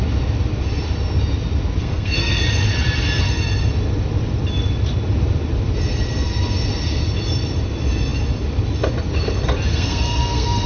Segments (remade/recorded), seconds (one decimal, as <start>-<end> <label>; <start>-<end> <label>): 0.0-1.8 recorded; 1.8-2.4 remade; 2.4-9.7 recorded; 9.7-10.7 remade